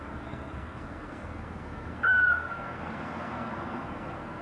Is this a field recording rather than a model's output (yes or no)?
no